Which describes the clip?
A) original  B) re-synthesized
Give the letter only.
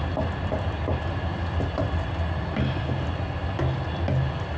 A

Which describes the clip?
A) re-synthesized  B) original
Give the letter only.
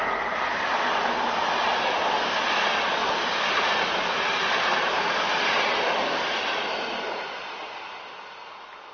B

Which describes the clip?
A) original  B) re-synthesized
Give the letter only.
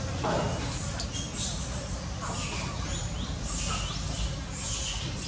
A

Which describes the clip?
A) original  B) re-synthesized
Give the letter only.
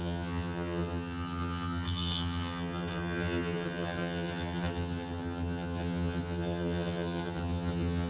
B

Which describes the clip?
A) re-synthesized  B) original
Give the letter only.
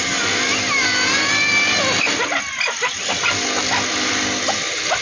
B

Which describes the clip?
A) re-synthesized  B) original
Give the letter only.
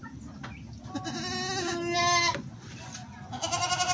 B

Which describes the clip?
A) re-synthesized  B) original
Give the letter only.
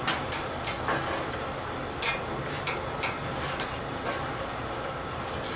B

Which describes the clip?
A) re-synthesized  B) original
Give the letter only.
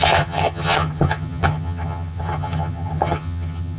A